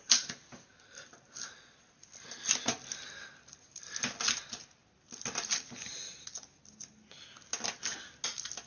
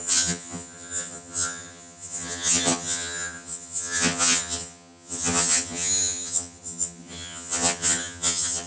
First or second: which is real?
first